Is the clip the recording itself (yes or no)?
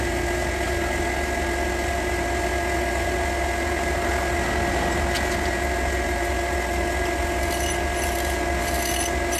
yes